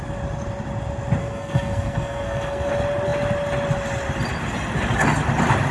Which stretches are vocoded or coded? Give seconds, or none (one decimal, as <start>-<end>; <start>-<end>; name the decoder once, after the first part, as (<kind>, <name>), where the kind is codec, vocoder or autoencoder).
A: 1.2-2.7 (codec, SNAC)